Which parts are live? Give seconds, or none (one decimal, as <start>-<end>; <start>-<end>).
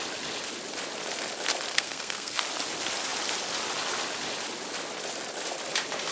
0.0-1.7; 2.4-6.1